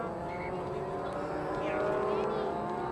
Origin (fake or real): real